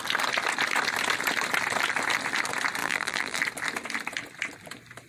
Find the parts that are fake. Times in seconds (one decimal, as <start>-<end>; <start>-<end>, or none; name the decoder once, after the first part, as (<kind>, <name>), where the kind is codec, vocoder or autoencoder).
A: 2.8-3.4 (vocoder, BigVGAN v2)